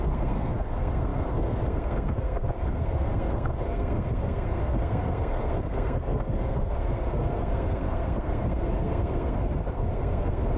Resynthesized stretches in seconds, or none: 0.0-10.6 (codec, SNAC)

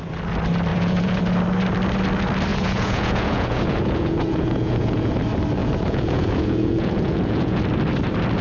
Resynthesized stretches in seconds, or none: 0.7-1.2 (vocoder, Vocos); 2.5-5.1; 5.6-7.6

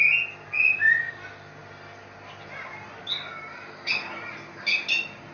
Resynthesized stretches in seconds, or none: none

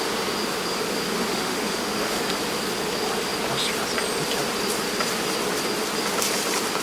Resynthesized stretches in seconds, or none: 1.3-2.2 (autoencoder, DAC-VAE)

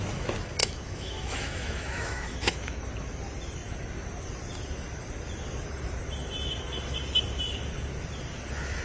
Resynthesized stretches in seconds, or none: 0.6-2.8 (autoencoder, DAC-VAE)

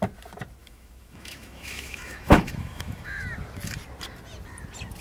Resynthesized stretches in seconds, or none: 0.6-3.2 (autoencoder, DAC-VAE)

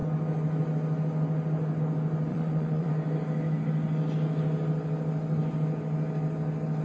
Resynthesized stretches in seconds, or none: 2.3-2.9 (vocoder, Vocos)